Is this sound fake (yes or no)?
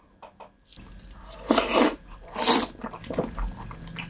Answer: no